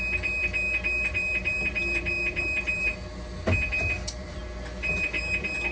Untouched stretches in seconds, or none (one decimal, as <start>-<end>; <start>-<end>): 2.9-4.2